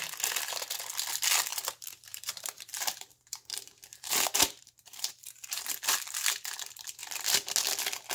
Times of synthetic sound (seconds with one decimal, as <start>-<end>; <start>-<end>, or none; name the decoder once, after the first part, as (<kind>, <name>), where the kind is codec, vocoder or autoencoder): 1.5-5.7 (vocoder, BigVGAN v2)